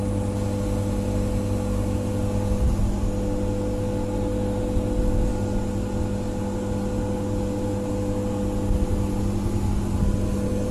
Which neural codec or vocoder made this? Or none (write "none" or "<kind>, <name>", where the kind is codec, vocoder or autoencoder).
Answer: none